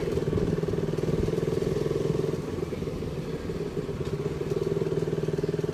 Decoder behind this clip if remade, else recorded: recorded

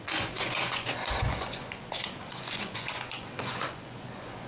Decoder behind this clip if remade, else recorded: remade, vocoder, Vocos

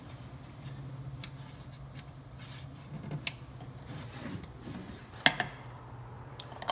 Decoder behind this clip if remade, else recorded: recorded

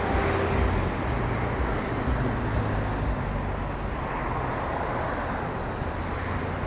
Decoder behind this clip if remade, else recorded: recorded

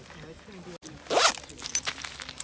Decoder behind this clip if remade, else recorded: recorded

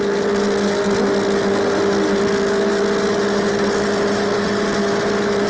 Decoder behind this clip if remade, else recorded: recorded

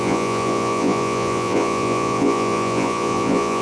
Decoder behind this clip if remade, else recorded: remade, vocoder, Vocos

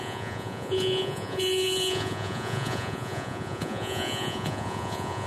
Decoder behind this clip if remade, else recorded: remade, vocoder, Vocos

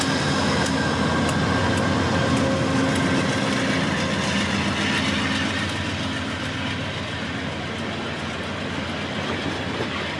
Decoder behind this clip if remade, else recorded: recorded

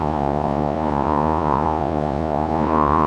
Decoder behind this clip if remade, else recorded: remade, vocoder, Vocos